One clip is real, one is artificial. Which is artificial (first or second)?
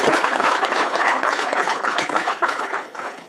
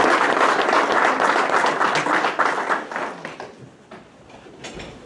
first